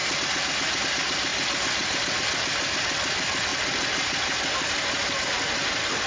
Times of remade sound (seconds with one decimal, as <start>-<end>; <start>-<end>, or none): none